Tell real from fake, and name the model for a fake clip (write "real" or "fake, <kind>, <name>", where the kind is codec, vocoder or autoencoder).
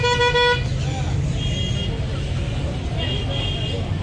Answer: real